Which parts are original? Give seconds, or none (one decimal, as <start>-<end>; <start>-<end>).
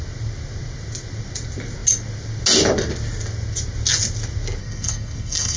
0.0-4.6